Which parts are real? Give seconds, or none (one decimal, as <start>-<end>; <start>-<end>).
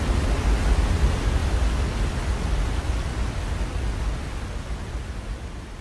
0.0-5.8